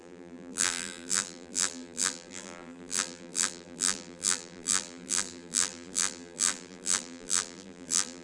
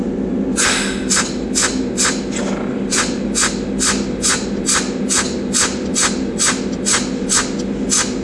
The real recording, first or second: second